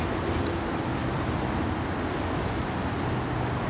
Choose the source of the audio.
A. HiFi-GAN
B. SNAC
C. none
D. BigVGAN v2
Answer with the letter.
C